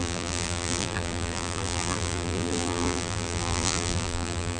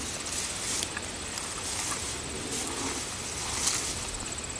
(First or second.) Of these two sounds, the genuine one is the second